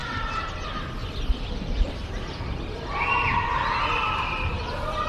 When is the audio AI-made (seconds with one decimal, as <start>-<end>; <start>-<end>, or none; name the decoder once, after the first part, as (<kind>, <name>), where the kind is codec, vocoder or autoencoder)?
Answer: 0.0-0.5 (vocoder, BigVGAN v2); 1.0-2.0